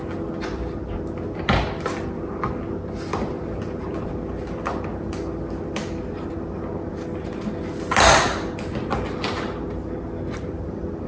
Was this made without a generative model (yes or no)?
yes